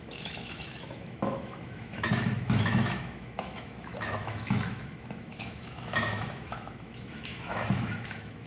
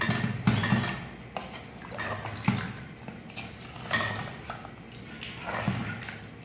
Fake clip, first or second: first